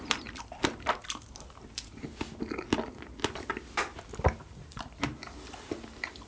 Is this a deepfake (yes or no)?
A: no